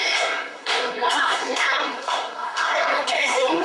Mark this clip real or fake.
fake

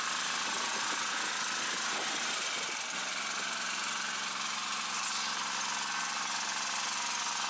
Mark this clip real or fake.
real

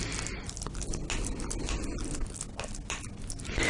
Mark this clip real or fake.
real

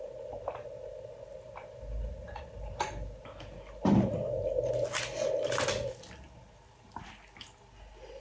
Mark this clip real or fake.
real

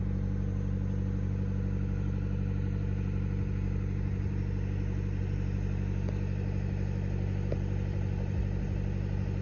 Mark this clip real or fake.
real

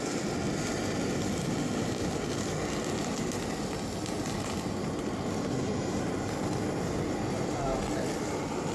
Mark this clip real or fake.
real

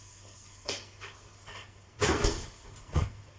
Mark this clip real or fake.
fake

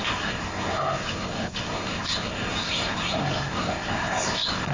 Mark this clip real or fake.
fake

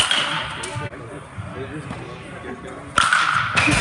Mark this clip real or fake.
real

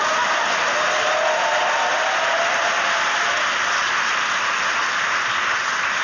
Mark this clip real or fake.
real